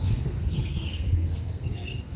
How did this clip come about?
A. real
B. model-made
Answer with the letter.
B